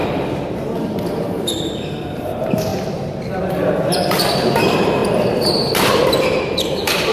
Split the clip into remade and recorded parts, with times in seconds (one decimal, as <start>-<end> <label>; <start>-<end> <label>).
0.0-2.7 remade; 2.7-3.5 recorded; 3.5-5.0 remade; 5.0-6.4 recorded; 6.4-7.1 remade